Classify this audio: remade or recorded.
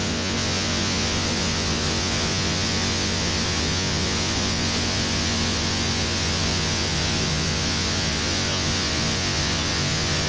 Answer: remade